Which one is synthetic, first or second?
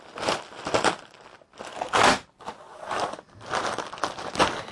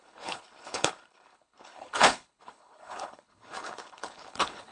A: second